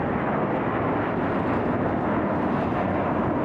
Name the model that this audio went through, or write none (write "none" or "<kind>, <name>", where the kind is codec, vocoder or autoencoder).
none